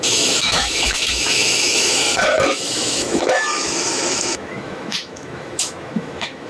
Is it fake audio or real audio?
fake